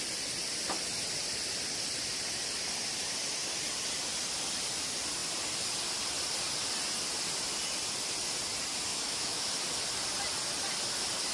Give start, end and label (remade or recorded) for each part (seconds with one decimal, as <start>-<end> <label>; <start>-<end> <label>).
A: 0.0-8.9 recorded; 8.9-9.5 remade; 9.5-11.3 recorded